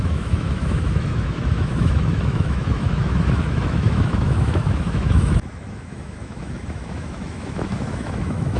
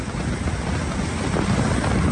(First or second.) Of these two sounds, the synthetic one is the first